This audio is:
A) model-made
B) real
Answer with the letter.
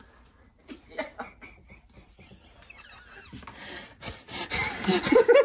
B